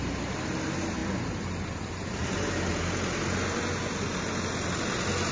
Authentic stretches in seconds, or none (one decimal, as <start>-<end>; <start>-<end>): 0.0-5.3